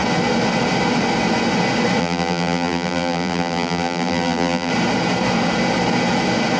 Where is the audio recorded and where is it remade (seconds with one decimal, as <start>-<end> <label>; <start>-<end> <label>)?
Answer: 0.0-2.0 recorded; 2.0-4.7 remade; 4.7-6.6 recorded